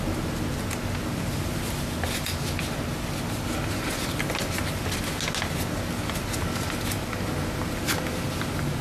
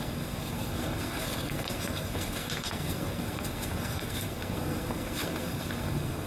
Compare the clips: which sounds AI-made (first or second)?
second